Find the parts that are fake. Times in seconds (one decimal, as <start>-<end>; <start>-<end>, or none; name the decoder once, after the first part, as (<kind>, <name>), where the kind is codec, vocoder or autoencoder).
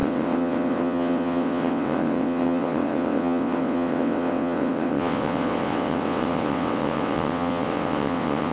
0.0-8.5 (vocoder, WaveNeXt)